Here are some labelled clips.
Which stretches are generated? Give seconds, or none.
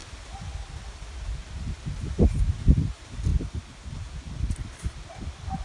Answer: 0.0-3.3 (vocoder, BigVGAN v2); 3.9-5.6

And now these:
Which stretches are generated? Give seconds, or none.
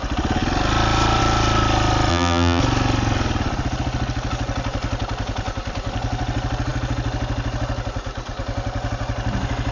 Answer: 2.1-2.6 (vocoder, BigVGAN v2)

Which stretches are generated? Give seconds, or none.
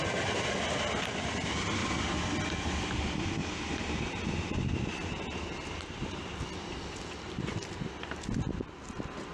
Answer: 3.4-6.2 (vocoder, BigVGAN v2)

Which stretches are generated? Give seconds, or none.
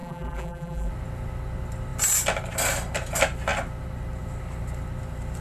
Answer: 0.0-0.9 (vocoder, BigVGAN v2)